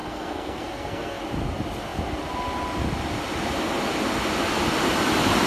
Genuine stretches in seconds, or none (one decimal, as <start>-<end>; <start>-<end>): 1.2-5.5